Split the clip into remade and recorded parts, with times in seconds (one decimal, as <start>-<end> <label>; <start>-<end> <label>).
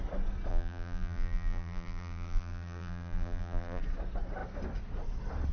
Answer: 0.0-0.5 recorded; 0.5-3.8 remade; 3.8-5.5 recorded